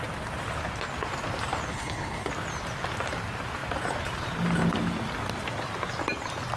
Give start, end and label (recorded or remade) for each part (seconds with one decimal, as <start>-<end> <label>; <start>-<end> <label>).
0.0-1.7 recorded; 1.7-2.3 remade; 2.3-6.6 recorded